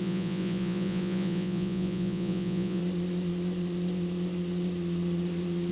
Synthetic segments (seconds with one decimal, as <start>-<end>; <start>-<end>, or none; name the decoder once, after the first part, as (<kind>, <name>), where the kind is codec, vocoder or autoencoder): 0.0-2.8 (vocoder, Vocos)